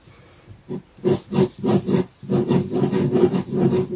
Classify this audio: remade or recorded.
recorded